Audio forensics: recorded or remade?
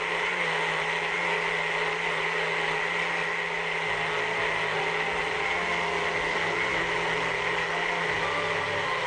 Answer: recorded